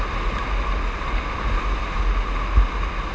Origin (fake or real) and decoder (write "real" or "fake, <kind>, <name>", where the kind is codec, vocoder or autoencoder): real